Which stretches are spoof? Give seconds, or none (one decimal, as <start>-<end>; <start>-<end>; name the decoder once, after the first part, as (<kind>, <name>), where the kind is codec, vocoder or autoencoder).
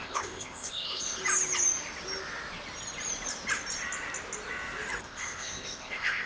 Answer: 0.0-1.2 (codec, ZipCodec); 5.0-6.3